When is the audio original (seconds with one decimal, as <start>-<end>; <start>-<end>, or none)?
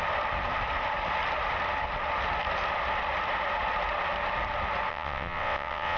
0.0-4.9